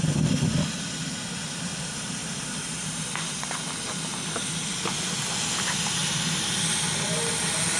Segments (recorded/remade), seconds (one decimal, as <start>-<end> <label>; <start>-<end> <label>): 0.0-2.2 recorded; 2.2-3.2 remade; 3.2-7.8 recorded